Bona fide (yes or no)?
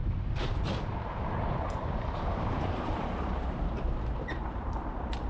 no